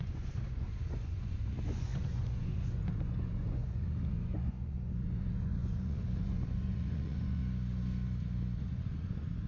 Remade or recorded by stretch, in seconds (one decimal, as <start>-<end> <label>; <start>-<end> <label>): 0.0-7.4 remade; 7.4-8.6 recorded; 8.6-9.5 remade